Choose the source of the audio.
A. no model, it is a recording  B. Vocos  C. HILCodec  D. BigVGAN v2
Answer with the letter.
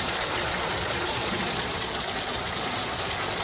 B